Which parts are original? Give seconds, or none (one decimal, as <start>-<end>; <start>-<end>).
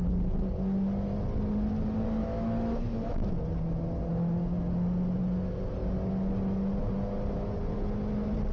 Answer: 0.0-2.2; 3.3-8.5